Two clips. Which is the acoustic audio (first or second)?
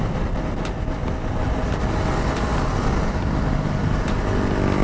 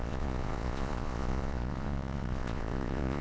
first